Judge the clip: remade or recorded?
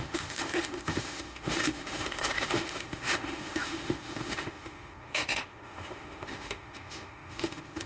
remade